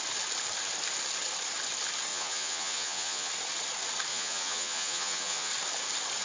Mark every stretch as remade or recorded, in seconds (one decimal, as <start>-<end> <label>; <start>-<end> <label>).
0.0-2.1 recorded; 2.1-3.3 remade; 3.3-4.1 recorded; 4.1-5.5 remade; 5.5-6.2 recorded